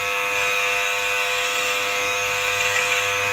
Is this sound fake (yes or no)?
yes